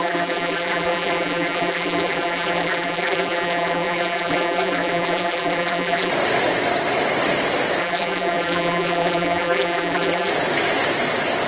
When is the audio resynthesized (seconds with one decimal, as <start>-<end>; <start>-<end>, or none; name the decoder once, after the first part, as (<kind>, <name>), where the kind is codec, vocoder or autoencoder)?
0.0-6.1 (vocoder, BigVGAN v2); 7.8-10.3